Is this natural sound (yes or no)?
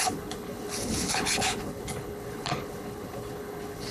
no